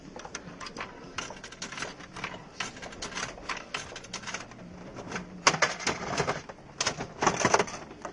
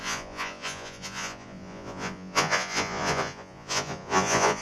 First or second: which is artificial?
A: second